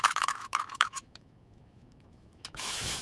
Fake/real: fake